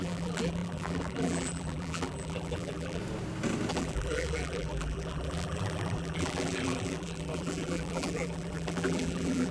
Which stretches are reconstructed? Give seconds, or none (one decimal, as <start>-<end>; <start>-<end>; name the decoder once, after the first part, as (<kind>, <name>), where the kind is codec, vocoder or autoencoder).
0.0-3.0 (vocoder, BigVGAN v2); 3.7-9.5